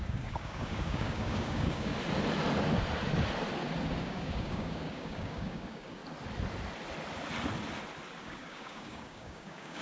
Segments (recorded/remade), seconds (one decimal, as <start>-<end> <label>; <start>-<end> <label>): 0.0-1.9 remade; 1.9-4.0 recorded; 4.0-6.0 remade; 6.0-8.2 recorded; 8.2-9.8 remade

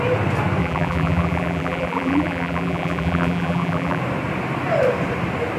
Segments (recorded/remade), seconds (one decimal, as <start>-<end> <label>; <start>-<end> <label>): 0.0-0.6 recorded; 0.6-4.0 remade; 4.0-5.6 recorded

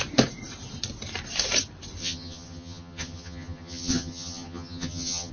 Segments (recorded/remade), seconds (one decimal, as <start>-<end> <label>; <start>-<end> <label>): 0.0-2.0 recorded; 2.0-5.3 remade

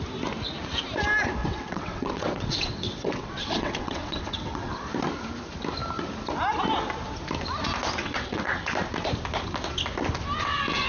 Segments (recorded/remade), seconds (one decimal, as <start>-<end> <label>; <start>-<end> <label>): 0.0-1.4 recorded; 1.4-4.7 remade; 4.7-8.0 recorded; 8.0-8.7 remade; 8.7-10.9 recorded

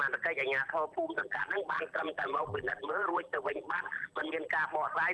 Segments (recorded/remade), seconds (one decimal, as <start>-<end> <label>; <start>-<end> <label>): 0.0-1.2 recorded; 1.2-4.3 remade; 4.3-5.1 recorded

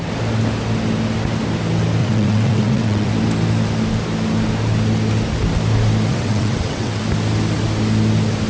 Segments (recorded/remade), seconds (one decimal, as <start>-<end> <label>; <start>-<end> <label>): 0.0-2.0 recorded; 2.0-3.1 remade; 3.1-6.1 recorded; 6.1-7.0 remade; 7.0-8.5 recorded

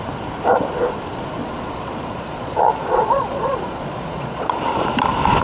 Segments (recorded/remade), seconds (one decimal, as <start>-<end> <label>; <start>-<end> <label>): 0.0-1.4 recorded; 1.4-4.6 remade; 4.6-5.4 recorded

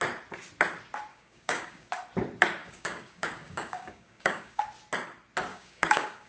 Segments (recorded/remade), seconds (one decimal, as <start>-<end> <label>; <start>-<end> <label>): 0.0-1.1 recorded; 1.1-1.9 remade; 1.9-2.6 recorded; 2.6-4.6 remade; 4.6-5.5 recorded; 5.5-6.3 remade